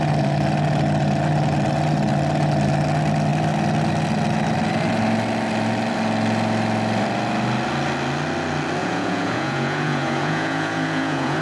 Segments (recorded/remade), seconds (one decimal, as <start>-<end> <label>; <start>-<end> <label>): 0.0-8.8 recorded; 8.8-11.4 remade